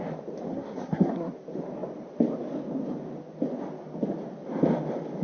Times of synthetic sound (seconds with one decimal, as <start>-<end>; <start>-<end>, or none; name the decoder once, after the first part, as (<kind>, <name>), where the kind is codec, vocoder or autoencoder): 0.5-1.3 (codec, SNAC)